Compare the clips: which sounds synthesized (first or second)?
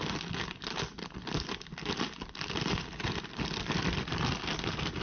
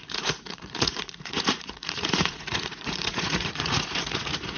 second